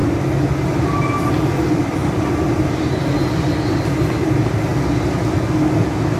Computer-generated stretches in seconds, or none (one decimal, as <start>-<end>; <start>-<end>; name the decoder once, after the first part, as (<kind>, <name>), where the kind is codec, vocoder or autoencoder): none